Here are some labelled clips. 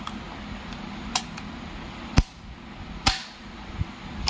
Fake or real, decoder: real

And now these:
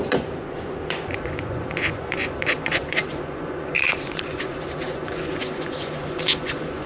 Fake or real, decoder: fake, vocoder, Vocos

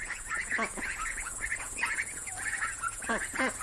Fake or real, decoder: fake, vocoder, Vocos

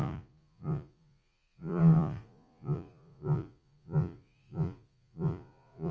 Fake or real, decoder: fake, vocoder, Vocos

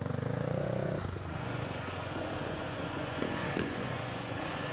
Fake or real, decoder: fake, vocoder, Vocos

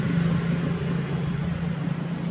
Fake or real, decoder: real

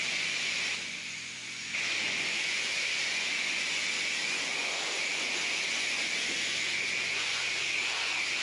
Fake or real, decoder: fake, vocoder, Vocos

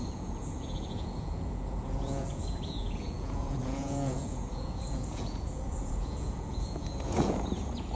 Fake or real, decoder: fake, vocoder, Vocos